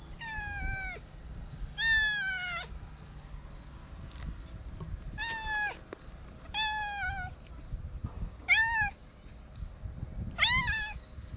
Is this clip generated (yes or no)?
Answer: no